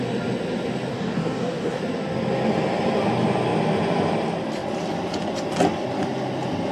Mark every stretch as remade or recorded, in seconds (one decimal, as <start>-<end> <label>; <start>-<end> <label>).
0.0-0.9 recorded; 0.9-1.8 remade; 1.8-6.7 recorded